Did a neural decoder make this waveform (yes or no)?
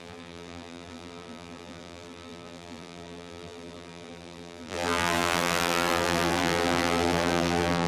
yes